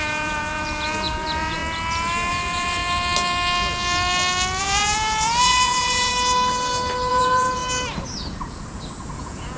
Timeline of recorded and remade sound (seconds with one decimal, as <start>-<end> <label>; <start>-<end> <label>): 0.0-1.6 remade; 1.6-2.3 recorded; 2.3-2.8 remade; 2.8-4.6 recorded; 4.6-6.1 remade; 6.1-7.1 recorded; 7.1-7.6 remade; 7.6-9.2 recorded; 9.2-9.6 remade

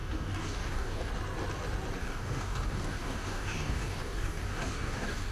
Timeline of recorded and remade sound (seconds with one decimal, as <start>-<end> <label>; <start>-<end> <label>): 0.0-1.1 remade; 1.1-2.0 recorded; 2.0-5.3 remade

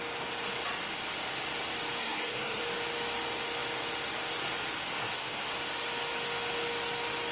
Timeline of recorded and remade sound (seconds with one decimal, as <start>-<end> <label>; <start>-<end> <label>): 0.0-2.0 recorded; 2.0-2.6 remade; 2.6-5.0 recorded; 5.0-5.5 remade; 5.5-7.3 recorded

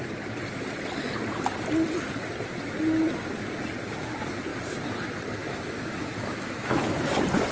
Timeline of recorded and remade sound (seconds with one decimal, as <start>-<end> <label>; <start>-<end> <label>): 0.0-5.4 recorded; 5.4-7.1 remade; 7.1-7.5 recorded